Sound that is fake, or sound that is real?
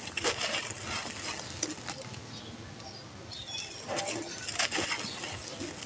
real